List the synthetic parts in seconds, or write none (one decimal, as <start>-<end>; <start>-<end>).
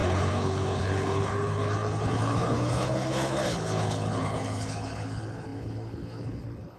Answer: 0.0-6.8